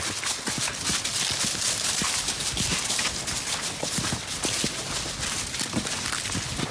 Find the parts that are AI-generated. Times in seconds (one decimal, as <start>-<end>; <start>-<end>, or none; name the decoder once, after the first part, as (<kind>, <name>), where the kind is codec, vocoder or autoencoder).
none